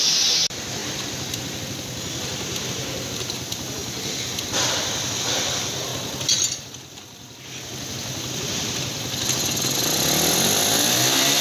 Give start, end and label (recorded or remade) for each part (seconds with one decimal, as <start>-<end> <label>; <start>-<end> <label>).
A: 0.0-0.8 remade; 0.8-3.1 recorded; 3.1-5.9 remade; 5.9-9.8 recorded; 9.8-11.4 remade